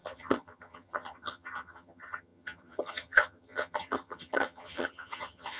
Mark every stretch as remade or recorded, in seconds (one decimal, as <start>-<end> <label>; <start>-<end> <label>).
0.0-5.6 remade